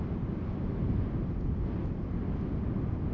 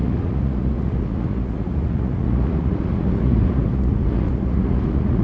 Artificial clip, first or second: second